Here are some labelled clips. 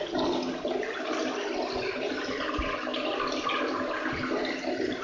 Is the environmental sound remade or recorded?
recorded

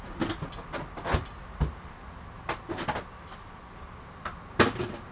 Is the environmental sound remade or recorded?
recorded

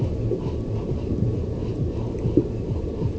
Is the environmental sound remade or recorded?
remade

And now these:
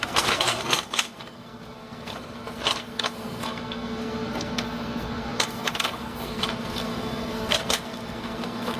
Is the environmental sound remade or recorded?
remade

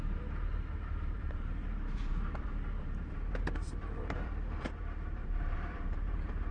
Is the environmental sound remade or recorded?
remade